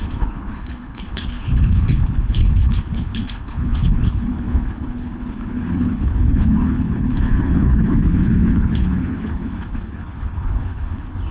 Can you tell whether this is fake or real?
fake